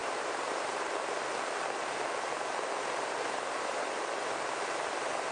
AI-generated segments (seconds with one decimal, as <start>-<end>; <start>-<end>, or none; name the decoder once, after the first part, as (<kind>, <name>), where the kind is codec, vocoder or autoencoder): 0.0-0.5 (vocoder, BigVGAN v2)